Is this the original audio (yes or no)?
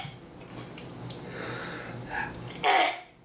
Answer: yes